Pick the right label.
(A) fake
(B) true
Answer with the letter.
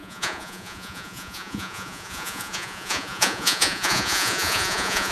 A